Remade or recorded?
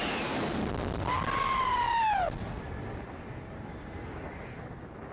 recorded